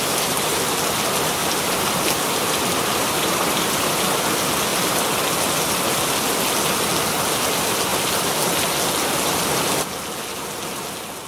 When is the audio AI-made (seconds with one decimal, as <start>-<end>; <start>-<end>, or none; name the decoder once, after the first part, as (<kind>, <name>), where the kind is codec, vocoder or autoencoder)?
1.4-4.2 (vocoder, BigVGAN v2); 7.9-8.5